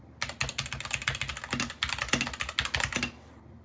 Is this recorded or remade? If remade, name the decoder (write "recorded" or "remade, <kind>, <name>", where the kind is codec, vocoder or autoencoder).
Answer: recorded